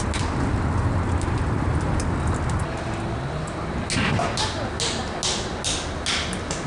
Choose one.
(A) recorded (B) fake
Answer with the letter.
A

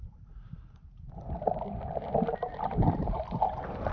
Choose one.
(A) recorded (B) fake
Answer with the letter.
A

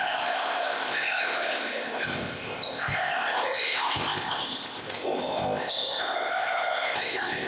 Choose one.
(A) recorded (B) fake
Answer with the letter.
B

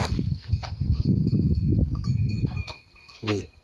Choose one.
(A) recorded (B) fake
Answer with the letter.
B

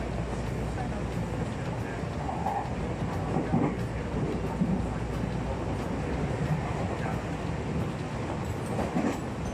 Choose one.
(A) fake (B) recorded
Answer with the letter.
B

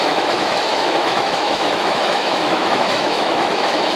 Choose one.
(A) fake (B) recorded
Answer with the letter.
A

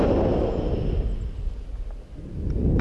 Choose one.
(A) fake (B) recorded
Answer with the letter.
B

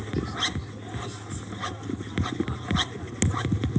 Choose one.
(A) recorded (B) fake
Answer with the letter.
A